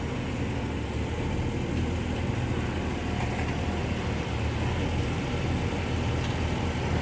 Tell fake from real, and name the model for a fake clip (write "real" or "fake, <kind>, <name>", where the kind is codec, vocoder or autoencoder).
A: real